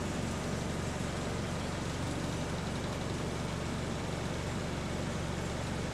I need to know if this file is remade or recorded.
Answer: recorded